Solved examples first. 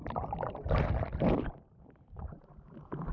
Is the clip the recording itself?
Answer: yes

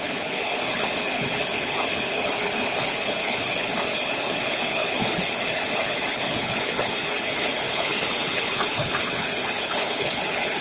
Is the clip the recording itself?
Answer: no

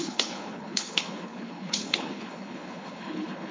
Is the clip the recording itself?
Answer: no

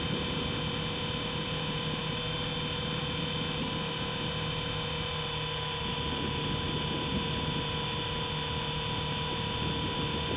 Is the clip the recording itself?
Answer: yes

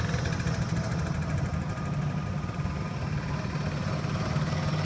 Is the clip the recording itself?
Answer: yes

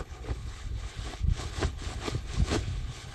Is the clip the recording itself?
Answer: no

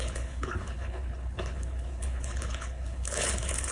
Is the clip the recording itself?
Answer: no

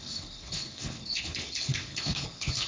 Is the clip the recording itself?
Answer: no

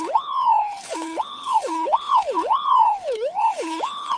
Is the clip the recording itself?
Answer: no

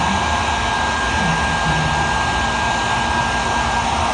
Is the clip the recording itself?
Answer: yes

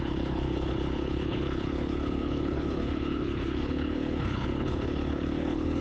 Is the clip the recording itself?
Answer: no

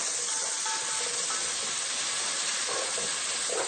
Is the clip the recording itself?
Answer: yes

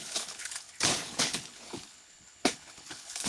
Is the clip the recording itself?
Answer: no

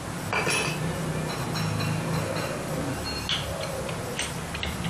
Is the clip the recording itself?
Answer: yes